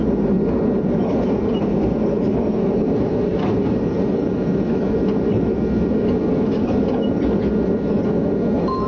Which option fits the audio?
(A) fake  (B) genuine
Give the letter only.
B